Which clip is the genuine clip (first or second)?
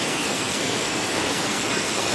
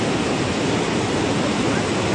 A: second